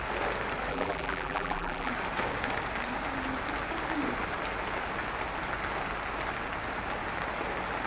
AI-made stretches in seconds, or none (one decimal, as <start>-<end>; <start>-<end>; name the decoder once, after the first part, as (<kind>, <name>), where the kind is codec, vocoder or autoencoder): 0.7-1.9 (vocoder, BigVGAN v2)